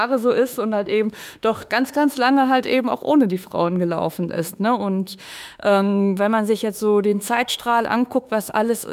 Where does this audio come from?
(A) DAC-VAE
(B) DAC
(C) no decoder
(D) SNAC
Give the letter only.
A